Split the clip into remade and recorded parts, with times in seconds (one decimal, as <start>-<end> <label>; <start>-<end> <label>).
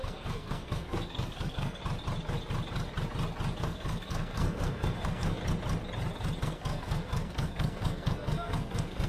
0.0-1.8 remade; 1.8-3.6 recorded; 3.6-5.4 remade; 5.4-6.4 recorded; 6.4-9.1 remade